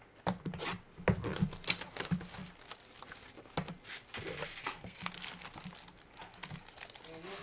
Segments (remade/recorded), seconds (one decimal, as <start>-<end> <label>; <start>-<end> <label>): 0.0-4.6 recorded; 4.6-5.1 remade; 5.1-7.4 recorded

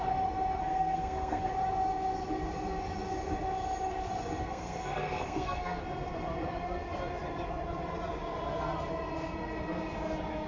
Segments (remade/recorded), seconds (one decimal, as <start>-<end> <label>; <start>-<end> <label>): 0.0-0.6 recorded; 0.6-1.5 remade; 1.5-4.4 recorded; 4.4-5.8 remade; 5.8-10.5 recorded

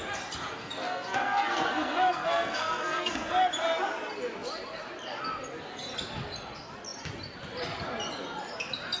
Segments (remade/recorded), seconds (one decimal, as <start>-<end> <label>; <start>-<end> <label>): 0.0-0.6 recorded; 0.6-3.3 remade; 3.3-9.0 recorded

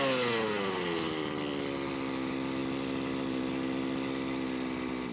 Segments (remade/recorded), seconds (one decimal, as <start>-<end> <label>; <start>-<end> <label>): 0.0-5.1 recorded

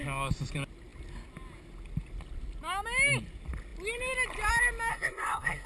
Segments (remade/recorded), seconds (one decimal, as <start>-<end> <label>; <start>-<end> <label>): 0.0-4.9 recorded; 4.9-5.7 remade

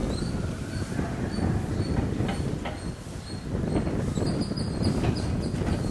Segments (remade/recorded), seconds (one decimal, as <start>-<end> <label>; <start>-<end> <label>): 0.0-5.9 recorded